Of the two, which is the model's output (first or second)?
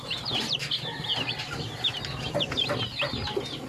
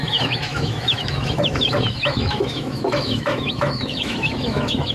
second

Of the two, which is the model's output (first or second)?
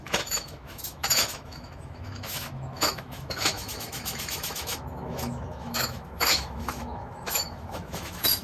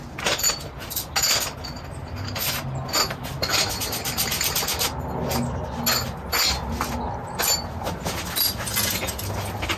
first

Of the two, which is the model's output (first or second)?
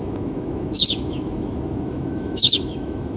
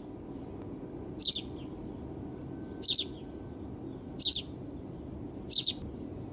first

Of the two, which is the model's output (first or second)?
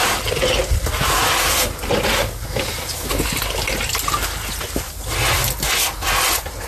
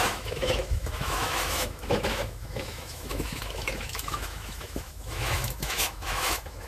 second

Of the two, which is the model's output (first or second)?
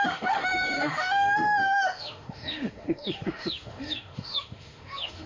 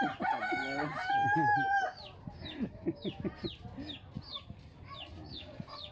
first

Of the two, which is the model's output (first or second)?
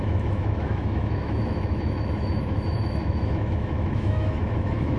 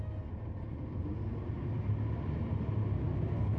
first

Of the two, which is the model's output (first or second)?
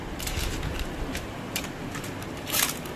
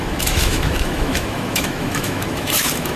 second